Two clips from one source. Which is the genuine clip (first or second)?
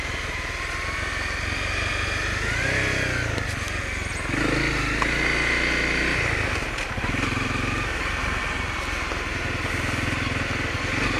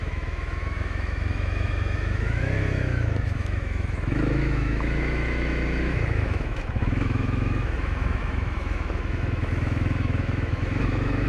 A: first